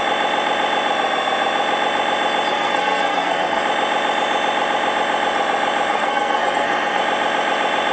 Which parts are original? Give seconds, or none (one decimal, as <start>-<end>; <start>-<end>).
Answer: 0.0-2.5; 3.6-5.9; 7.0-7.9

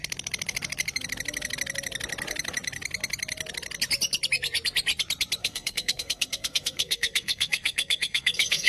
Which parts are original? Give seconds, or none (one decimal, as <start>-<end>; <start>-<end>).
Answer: 0.0-5.4

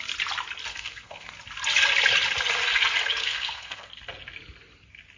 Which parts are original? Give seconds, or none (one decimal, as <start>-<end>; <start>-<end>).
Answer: 0.0-0.7; 1.3-3.2; 3.9-5.2

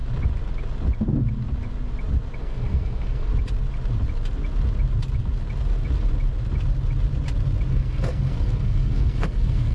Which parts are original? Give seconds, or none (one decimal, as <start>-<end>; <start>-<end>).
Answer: 0.0-2.4; 3.3-7.7

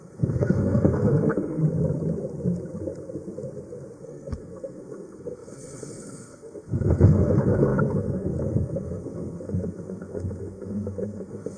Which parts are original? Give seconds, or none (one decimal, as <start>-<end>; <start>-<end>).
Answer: 1.6-4.0

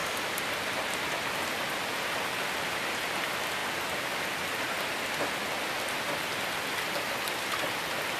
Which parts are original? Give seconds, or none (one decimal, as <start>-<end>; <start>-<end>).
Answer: 0.0-8.2

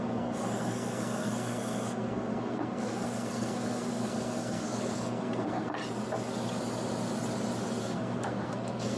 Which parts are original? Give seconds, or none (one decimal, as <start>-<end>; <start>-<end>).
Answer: 5.8-7.8